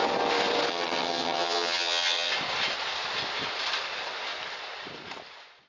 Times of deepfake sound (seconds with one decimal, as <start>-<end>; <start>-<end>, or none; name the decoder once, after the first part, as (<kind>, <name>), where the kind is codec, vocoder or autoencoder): 0.7-2.3 (vocoder, HiFi-GAN)